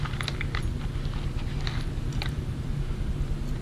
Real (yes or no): yes